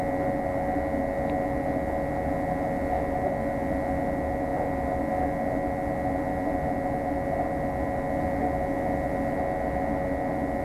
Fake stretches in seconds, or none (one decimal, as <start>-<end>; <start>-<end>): none